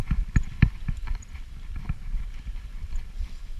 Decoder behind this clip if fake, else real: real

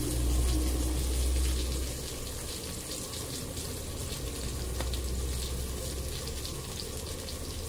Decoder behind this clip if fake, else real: real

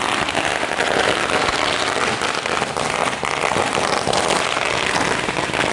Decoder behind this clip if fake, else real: real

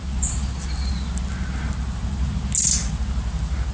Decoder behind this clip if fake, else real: real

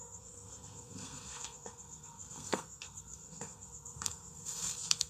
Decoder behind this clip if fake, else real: fake, codec, SNAC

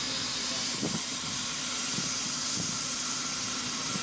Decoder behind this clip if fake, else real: real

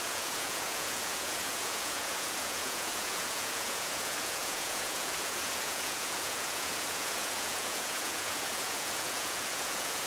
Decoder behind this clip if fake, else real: fake, vocoder, Vocos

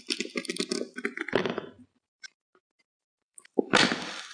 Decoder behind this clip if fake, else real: fake, vocoder, BigVGAN v2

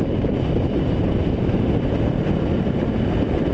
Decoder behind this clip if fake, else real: real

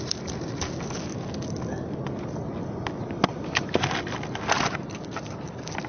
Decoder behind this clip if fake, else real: real